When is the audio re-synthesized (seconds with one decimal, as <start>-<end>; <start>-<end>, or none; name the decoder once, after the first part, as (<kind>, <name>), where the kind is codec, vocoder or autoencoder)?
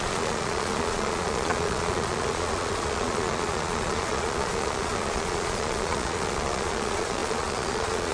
0.0-8.1 (vocoder, Vocos)